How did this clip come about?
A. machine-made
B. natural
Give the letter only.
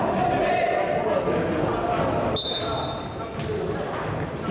B